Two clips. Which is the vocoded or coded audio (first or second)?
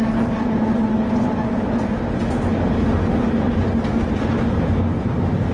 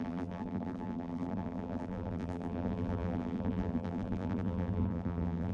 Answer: second